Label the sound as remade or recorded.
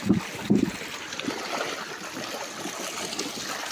remade